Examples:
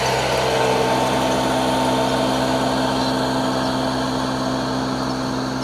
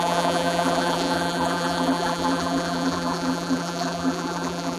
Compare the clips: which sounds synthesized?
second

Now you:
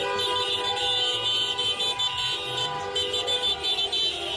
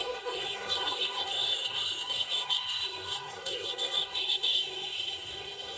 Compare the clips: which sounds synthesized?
second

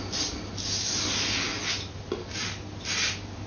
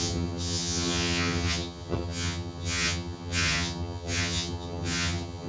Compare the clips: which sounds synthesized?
second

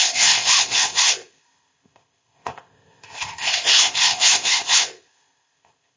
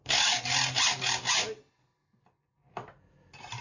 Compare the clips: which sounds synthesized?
first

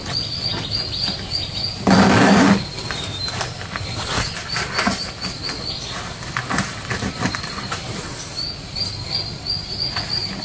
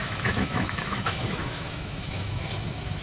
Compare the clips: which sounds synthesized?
second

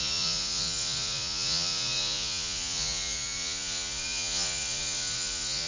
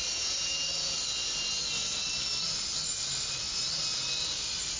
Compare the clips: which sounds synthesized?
first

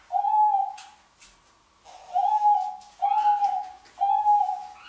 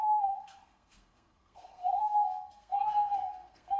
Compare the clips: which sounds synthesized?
second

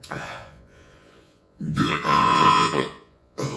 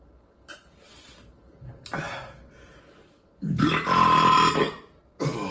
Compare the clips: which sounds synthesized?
first